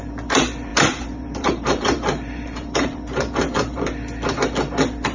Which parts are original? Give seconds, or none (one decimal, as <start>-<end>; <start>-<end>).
0.0-0.7; 3.8-5.1